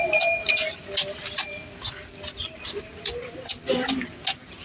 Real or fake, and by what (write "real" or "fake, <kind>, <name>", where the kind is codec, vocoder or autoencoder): real